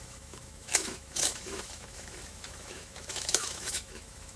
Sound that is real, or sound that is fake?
fake